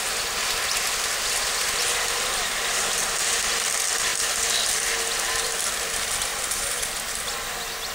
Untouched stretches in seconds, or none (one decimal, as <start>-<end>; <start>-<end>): 0.0-0.7; 3.4-6.3; 7.1-7.9